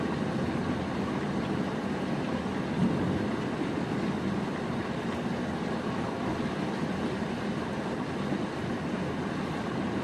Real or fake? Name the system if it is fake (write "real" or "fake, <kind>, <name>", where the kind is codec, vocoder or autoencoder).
real